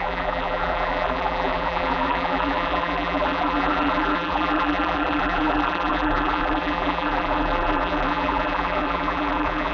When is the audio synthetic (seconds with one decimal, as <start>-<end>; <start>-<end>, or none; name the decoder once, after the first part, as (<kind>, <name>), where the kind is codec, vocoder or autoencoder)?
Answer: 0.0-9.7 (vocoder, BigVGAN v2)